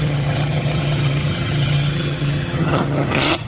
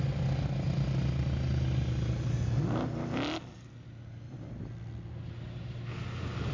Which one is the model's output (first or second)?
first